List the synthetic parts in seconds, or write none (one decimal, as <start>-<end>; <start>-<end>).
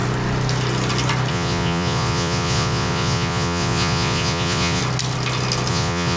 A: 1.3-4.8; 5.7-6.2